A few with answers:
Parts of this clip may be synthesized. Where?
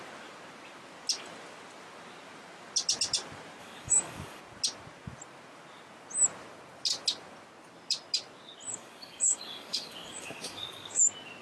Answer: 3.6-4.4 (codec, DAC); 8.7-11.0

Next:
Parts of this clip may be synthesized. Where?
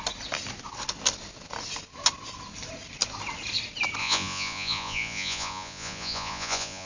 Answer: 4.0-6.9 (vocoder, Vocos)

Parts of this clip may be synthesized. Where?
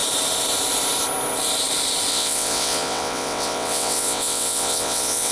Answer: 2.1-5.3 (vocoder, WaveNeXt)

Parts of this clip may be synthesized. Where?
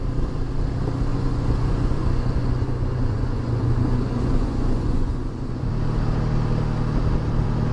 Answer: 1.1-5.7 (vocoder, Vocos)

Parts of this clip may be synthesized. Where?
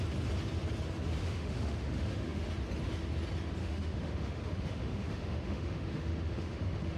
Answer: 1.2-2.5 (autoencoder, DAC-VAE); 3.6-7.0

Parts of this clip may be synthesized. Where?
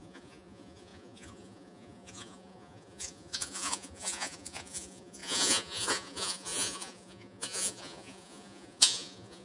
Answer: 0.0-9.4 (vocoder, Vocos)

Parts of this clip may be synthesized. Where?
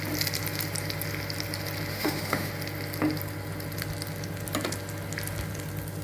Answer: 1.9-2.5 (autoencoder, DAC-VAE)